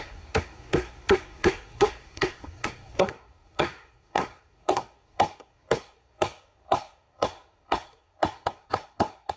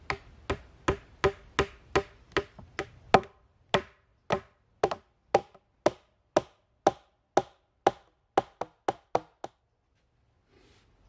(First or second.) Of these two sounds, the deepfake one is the first